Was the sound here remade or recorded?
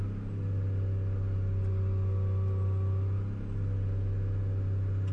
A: recorded